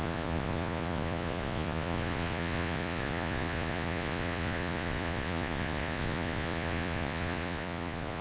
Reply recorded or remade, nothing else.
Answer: remade